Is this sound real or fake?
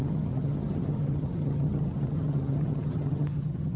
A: fake